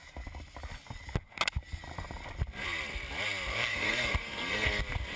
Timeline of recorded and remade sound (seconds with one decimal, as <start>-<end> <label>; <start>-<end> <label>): 0.0-3.5 recorded; 3.5-4.8 remade; 4.8-5.2 recorded